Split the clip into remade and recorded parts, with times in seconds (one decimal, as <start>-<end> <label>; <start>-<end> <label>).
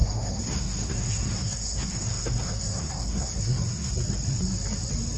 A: 0.0-3.9 remade; 3.9-5.2 recorded